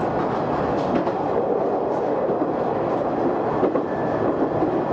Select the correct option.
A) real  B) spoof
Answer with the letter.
A